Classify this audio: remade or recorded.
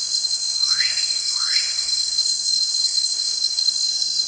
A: remade